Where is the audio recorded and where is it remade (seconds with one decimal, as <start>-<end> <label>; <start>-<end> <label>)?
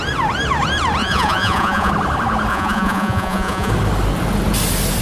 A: 0.0-1.0 recorded; 1.0-1.9 remade; 1.9-2.5 recorded; 2.5-3.7 remade; 3.7-5.0 recorded